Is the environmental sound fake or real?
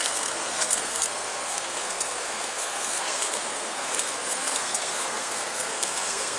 fake